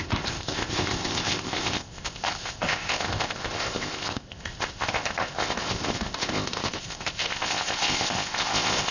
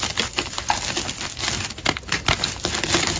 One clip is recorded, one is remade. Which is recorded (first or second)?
second